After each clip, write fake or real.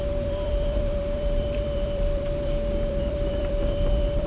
fake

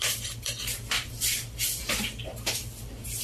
fake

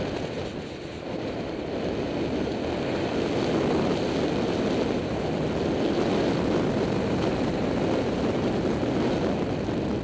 real